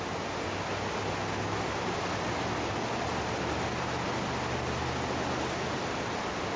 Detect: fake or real real